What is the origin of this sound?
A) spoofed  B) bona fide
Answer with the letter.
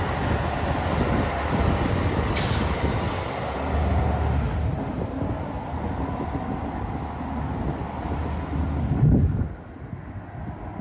B